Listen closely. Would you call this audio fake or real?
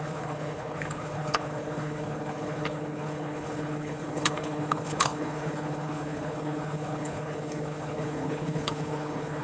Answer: fake